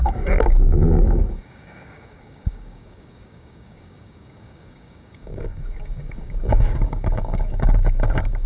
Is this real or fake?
fake